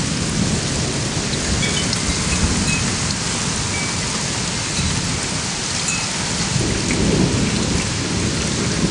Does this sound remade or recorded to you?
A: recorded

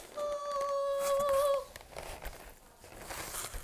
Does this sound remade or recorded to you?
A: recorded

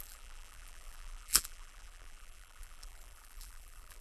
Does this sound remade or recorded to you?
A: remade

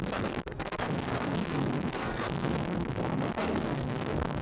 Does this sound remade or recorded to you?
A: remade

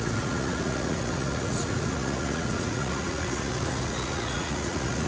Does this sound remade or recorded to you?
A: remade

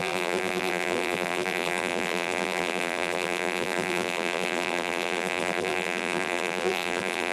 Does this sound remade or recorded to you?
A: remade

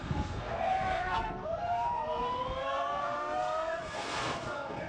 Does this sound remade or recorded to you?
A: remade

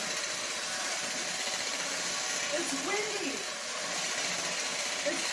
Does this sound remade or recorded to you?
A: recorded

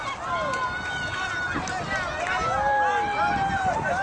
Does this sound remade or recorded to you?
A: recorded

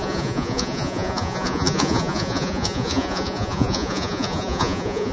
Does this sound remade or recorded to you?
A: remade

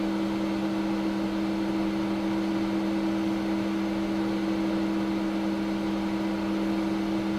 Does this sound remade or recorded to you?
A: recorded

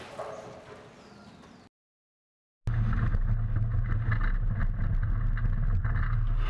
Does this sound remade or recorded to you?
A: recorded